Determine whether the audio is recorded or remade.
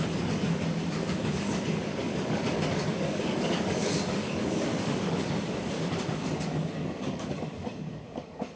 remade